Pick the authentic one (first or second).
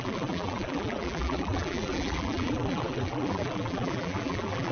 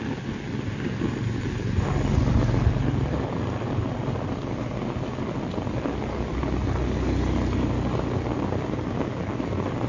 second